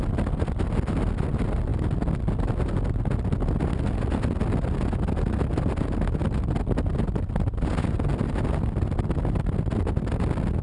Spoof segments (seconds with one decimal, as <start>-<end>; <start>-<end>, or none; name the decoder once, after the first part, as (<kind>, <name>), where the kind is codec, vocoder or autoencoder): none